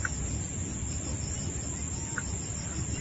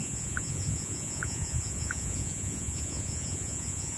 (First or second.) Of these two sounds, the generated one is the second